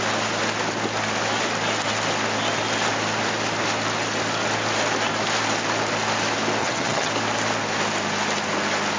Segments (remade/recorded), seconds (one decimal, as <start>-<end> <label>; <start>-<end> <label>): 0.0-6.6 recorded; 6.6-7.1 remade; 7.1-9.0 recorded